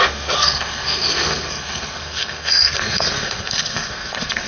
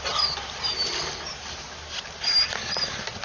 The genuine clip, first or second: second